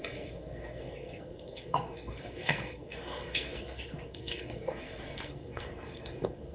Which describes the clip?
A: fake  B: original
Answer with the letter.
A